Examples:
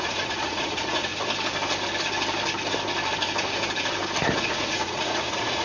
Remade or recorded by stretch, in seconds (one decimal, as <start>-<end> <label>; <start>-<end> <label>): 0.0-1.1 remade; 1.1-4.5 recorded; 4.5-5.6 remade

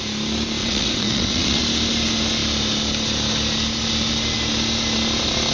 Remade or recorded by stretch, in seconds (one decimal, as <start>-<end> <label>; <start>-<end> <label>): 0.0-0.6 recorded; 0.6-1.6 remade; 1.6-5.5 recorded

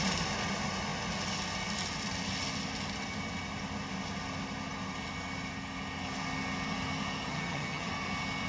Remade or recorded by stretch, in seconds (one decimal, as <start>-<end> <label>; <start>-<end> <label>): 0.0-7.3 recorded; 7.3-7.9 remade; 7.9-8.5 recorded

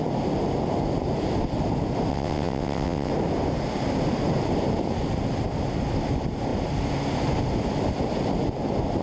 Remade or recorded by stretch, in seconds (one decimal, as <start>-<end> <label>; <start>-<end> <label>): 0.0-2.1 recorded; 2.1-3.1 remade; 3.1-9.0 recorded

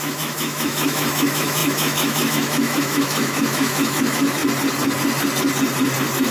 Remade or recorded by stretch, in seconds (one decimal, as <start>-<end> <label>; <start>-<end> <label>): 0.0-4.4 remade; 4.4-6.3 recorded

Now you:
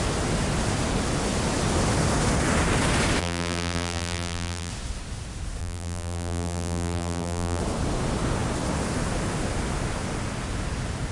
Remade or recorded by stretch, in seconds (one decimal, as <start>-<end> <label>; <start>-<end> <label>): 0.0-3.2 recorded; 3.2-4.7 remade; 4.7-5.6 recorded; 5.6-7.6 remade; 7.6-11.1 recorded

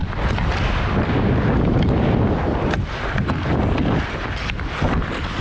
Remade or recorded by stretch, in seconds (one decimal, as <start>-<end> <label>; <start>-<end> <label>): 0.0-5.4 recorded

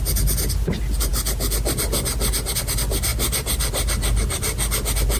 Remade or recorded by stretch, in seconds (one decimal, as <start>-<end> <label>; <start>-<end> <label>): 0.0-5.2 recorded